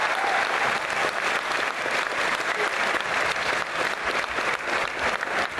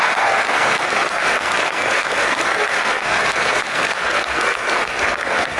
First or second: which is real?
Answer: first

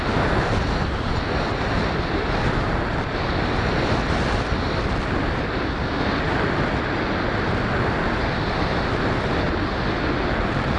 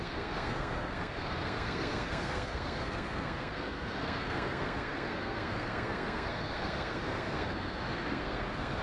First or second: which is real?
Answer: first